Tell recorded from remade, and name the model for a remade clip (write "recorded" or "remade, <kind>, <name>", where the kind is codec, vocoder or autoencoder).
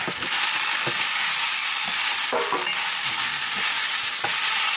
recorded